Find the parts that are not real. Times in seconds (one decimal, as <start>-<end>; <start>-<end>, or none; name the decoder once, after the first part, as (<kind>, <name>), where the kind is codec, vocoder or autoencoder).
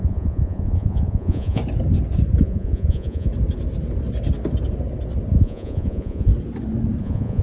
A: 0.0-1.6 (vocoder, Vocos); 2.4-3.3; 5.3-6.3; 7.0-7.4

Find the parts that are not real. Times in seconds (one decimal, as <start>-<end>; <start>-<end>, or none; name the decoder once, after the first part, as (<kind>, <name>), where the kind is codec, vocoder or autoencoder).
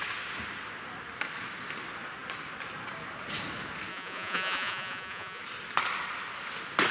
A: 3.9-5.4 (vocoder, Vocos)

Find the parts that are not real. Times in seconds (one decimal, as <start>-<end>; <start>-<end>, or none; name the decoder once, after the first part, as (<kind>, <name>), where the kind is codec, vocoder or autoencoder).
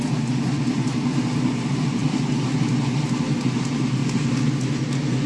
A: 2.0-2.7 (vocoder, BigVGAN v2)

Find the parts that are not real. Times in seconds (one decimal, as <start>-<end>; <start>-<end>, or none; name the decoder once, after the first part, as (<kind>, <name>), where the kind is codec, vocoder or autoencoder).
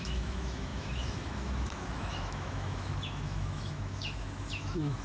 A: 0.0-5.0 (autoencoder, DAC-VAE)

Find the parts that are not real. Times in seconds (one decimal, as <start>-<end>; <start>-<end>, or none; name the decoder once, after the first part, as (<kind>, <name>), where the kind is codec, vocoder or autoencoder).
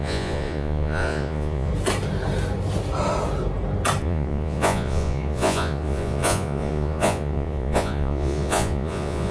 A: 0.0-1.7 (vocoder, Vocos); 4.0-9.3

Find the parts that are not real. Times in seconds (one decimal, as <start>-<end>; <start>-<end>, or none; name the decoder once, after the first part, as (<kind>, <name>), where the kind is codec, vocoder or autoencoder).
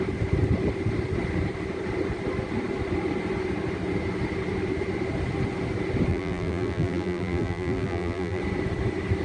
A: 6.1-8.4 (vocoder, BigVGAN v2)